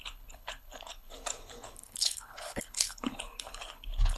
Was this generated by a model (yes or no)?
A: yes